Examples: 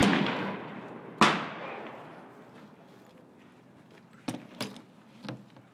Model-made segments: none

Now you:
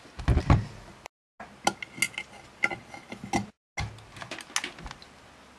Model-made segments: none

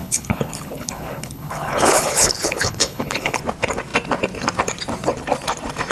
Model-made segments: 0.0-3.4

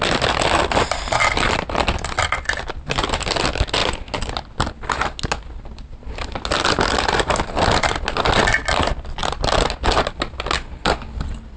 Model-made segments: none

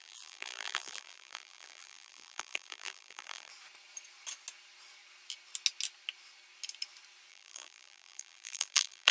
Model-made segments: 0.0-3.5; 7.3-9.1

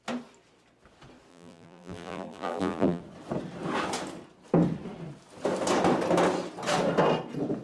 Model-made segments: 1.3-3.0